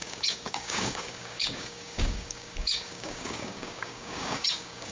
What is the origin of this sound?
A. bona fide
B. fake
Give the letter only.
B